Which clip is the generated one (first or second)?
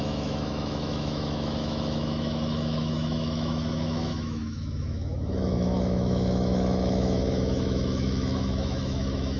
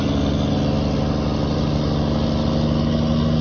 first